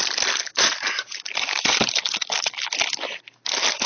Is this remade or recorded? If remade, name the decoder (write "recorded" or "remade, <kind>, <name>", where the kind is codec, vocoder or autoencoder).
recorded